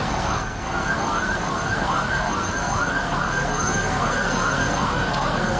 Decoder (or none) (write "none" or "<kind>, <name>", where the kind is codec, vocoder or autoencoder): codec, SNAC